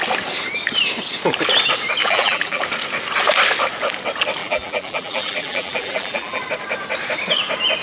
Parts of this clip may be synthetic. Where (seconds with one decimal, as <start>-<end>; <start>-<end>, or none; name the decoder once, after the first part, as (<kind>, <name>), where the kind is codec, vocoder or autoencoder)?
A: 2.0-2.6 (vocoder, BigVGAN v2); 4.4-6.4